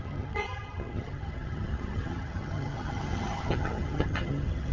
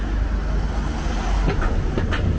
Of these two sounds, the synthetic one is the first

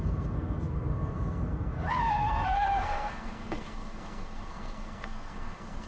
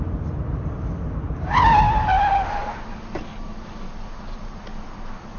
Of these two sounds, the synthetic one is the first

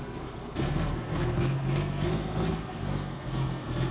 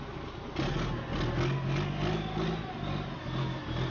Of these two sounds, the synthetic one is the first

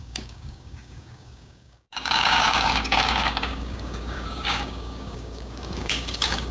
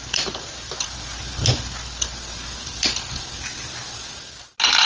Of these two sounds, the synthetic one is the first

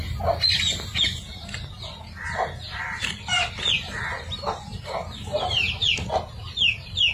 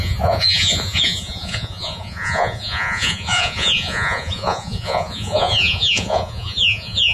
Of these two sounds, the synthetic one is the second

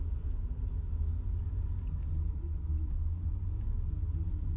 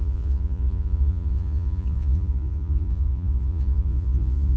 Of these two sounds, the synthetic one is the second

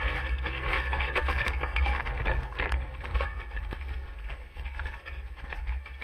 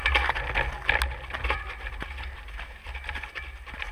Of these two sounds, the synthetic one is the first